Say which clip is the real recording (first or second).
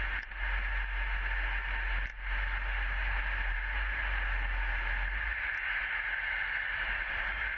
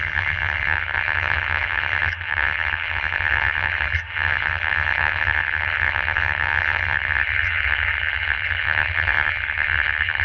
first